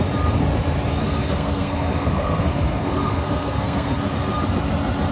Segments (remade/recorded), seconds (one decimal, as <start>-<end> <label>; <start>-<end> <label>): 0.0-1.0 recorded; 1.0-4.1 remade; 4.1-5.1 recorded